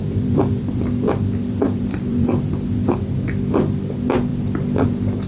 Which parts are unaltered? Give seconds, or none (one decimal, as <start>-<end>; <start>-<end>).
2.5-5.3